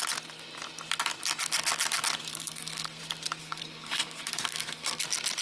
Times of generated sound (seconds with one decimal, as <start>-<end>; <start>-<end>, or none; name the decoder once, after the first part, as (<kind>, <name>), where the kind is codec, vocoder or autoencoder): 2.3-3.0 (codec, SNAC); 3.4-5.0

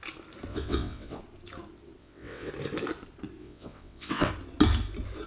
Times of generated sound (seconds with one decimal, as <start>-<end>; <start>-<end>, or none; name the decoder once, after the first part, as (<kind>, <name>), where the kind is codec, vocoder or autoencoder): 0.5-1.2 (vocoder, WaveNeXt); 2.0-2.5; 3.4-4.3